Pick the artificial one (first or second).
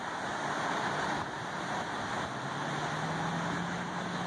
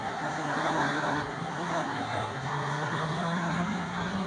second